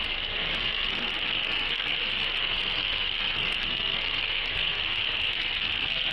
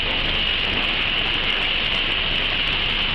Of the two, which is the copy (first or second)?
first